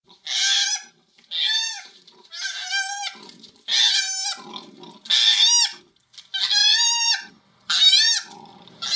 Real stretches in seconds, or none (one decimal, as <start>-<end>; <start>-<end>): 0.0-6.6; 7.4-9.0